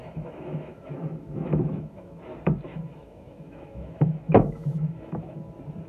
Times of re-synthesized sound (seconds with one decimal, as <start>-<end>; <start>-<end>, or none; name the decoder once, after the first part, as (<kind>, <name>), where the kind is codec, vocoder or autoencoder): 0.0-2.2 (autoencoder, DAC-VAE); 2.7-5.4